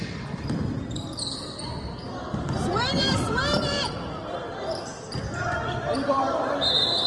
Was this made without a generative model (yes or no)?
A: no